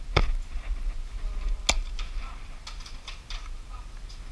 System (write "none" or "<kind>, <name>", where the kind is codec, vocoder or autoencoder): none